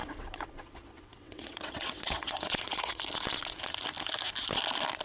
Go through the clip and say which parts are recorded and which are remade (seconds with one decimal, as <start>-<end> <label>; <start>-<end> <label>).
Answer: 0.0-3.0 remade; 3.0-5.0 recorded